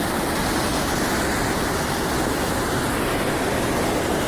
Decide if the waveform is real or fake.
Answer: real